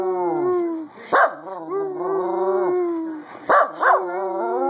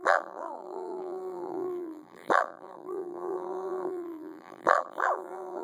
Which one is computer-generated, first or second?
second